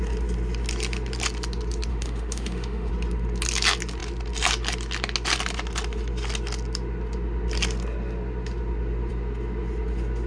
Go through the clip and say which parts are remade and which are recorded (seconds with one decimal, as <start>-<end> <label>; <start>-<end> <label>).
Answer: 0.0-1.9 recorded; 1.9-2.9 remade; 2.9-10.3 recorded